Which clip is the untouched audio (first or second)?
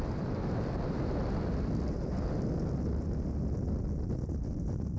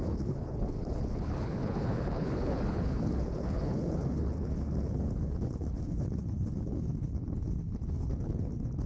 first